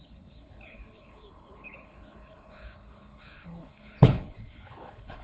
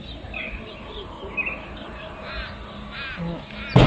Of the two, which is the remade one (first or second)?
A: first